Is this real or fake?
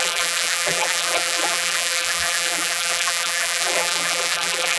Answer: fake